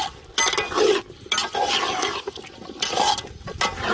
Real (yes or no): yes